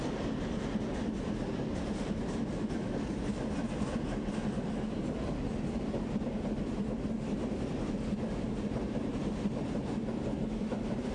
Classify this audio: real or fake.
real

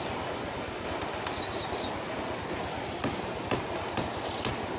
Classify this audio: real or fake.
real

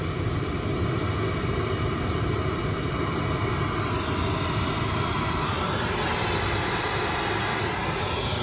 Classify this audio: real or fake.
real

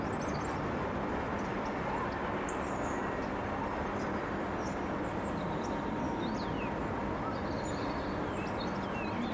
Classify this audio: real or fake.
real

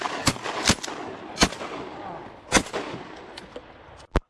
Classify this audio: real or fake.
real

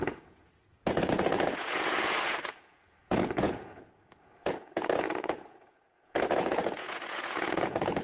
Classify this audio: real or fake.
fake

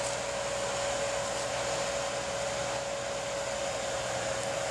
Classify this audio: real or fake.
real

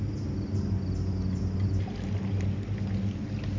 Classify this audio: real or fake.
real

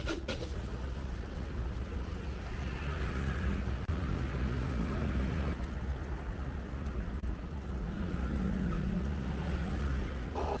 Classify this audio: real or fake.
fake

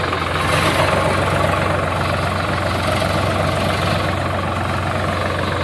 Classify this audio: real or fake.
real